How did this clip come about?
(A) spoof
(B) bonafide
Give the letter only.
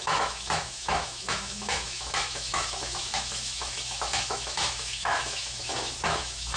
A